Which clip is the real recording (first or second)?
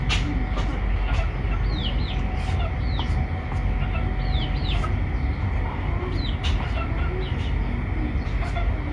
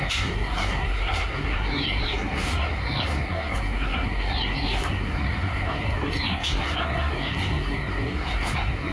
first